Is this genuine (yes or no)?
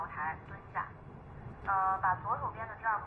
yes